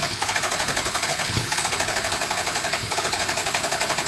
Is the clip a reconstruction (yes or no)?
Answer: yes